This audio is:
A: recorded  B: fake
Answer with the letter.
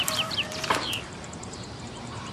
B